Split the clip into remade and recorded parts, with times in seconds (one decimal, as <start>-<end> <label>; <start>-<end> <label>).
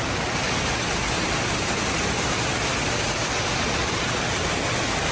0.0-5.1 recorded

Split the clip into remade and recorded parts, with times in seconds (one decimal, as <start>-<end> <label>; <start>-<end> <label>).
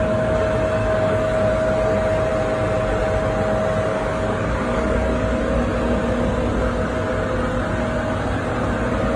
0.0-0.8 recorded; 0.8-1.5 remade; 1.5-3.9 recorded; 3.9-5.4 remade; 5.4-9.2 recorded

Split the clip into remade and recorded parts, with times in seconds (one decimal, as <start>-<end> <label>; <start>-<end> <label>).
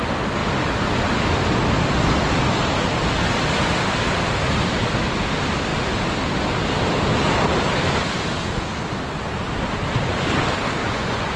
0.0-10.8 recorded; 10.8-11.4 remade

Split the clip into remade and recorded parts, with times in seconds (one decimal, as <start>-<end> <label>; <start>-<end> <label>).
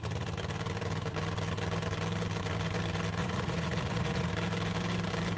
0.0-3.2 recorded; 3.2-4.3 remade; 4.3-5.4 recorded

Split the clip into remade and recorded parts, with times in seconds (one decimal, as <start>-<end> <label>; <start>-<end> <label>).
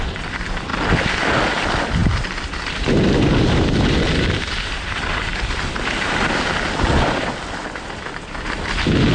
0.0-9.1 recorded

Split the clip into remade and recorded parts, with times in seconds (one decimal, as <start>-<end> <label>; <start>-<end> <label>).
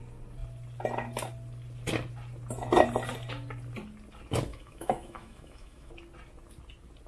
0.0-4.5 recorded; 4.5-5.9 remade; 5.9-7.1 recorded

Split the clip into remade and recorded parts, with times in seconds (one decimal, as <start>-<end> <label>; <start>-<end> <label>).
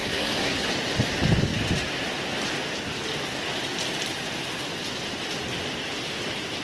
0.0-0.7 remade; 0.7-6.6 recorded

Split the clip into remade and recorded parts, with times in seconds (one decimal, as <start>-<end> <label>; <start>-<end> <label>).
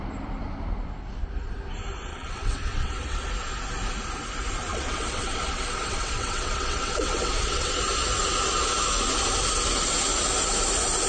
0.0-2.1 recorded; 2.1-3.3 remade; 3.3-4.7 recorded; 4.7-7.8 remade; 7.8-11.1 recorded